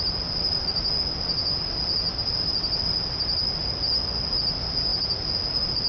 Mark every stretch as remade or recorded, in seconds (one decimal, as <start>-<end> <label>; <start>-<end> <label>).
0.0-5.9 recorded